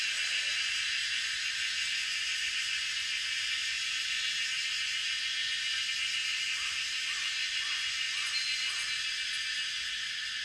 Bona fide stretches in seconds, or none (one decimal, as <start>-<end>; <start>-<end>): 0.0-1.0; 4.2-5.0; 5.9-7.4; 8.7-10.4